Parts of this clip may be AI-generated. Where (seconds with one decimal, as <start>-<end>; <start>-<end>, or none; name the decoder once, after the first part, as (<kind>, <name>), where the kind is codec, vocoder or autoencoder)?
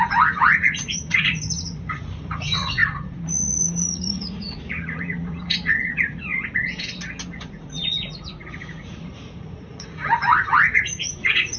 0.0-6.3 (vocoder, Vocos); 7.4-11.6